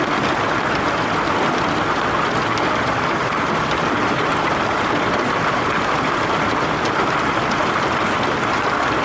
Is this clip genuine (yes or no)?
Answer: yes